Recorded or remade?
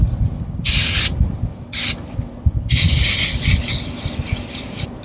recorded